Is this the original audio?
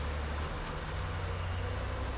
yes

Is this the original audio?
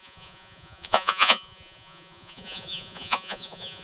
no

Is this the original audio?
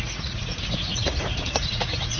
no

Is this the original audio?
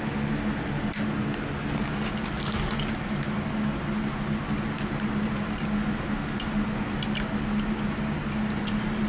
yes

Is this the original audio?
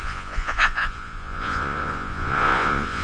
no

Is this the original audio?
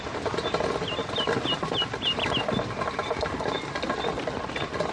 yes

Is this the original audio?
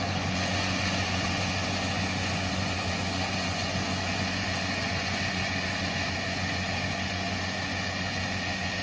no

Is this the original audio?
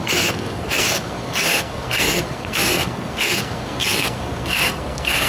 no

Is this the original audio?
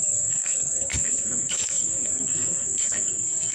no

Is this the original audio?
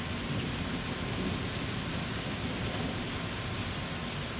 yes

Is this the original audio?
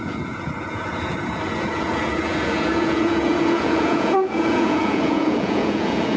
no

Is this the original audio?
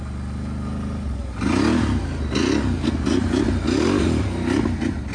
yes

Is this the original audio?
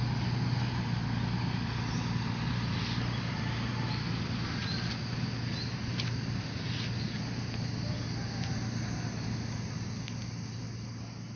yes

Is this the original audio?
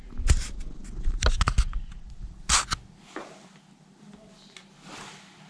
yes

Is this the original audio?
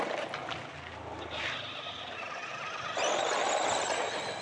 yes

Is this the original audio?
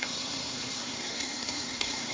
no